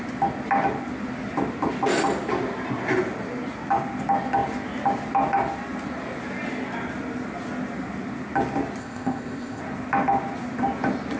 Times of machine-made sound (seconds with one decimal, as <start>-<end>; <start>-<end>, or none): 8.8-9.6